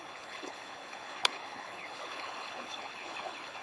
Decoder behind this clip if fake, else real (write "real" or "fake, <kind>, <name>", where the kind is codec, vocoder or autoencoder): fake, codec, HILCodec